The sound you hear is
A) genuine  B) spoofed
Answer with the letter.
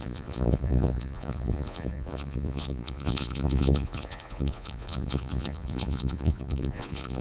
B